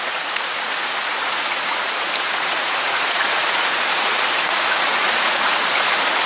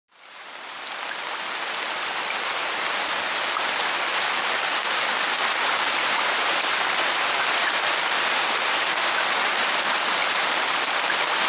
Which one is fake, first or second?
first